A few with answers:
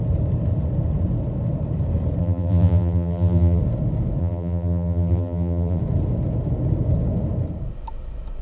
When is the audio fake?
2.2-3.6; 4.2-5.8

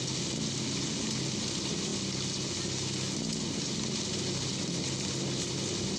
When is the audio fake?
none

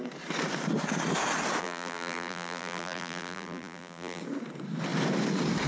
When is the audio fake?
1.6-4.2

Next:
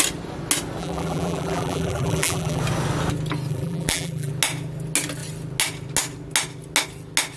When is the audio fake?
0.8-2.6; 3.5-4.3

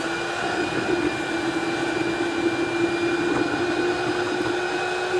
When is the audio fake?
none

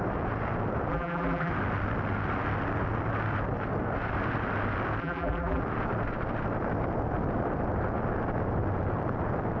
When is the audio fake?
0.9-1.5; 5.0-5.6

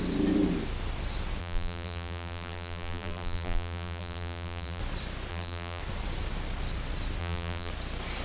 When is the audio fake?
1.4-4.8; 5.3-5.8; 7.2-7.7

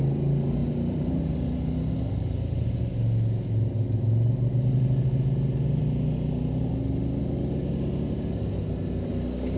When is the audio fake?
0.6-1.2